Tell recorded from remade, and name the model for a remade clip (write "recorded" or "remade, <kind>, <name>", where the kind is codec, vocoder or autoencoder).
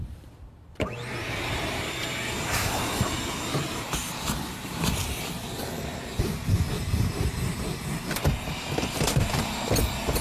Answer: remade, vocoder, BigVGAN v2